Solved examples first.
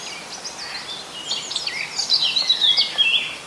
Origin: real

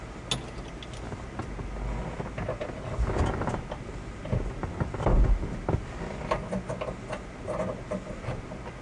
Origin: real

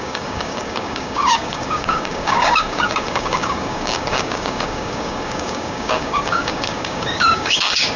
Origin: fake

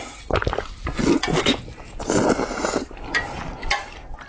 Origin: real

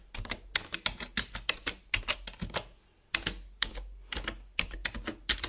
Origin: real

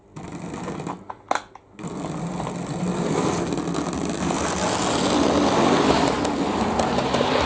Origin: real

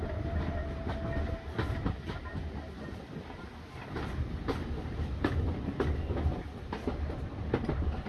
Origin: real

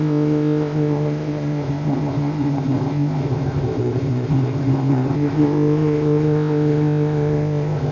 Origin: fake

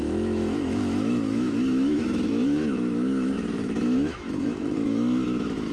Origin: fake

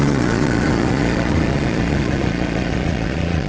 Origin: fake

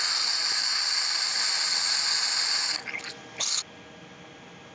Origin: real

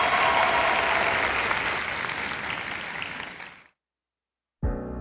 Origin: real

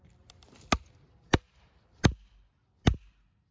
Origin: real